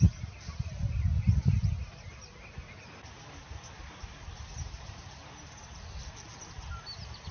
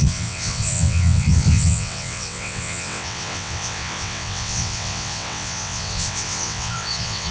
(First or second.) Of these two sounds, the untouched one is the first